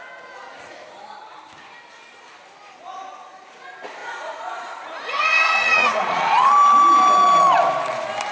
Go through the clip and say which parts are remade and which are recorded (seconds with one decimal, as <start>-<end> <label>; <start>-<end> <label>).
0.0-4.0 recorded; 4.0-6.5 remade; 6.5-8.3 recorded